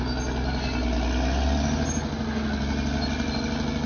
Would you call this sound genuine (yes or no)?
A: yes